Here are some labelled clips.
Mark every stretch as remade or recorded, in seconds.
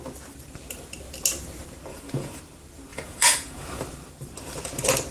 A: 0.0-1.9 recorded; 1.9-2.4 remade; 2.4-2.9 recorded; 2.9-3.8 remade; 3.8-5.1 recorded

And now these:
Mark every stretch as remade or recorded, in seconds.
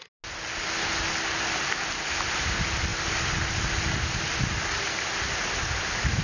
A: 0.0-6.2 recorded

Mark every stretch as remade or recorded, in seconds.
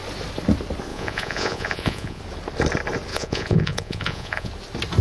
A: 0.0-0.9 recorded; 0.9-2.2 remade; 2.2-3.1 recorded; 3.1-4.5 remade; 4.5-5.0 recorded